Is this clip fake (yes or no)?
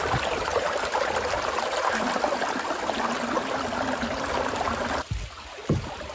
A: no